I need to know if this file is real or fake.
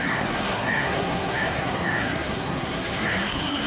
fake